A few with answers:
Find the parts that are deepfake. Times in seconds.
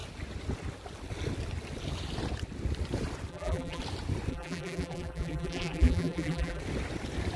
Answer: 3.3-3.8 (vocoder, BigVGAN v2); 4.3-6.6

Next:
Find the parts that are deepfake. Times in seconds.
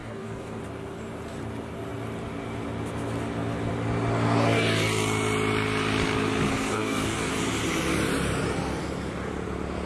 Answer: 0.0-0.6 (codec, DAC); 6.5-7.3